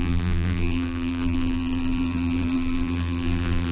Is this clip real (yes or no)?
no